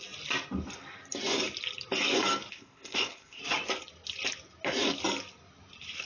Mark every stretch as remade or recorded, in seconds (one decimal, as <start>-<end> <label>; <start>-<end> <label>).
0.0-2.5 recorded; 2.5-3.4 remade; 3.4-6.1 recorded